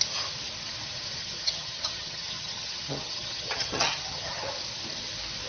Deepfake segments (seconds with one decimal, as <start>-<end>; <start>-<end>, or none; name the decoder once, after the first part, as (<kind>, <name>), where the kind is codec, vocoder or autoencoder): 1.2-4.5 (vocoder, HiFi-GAN)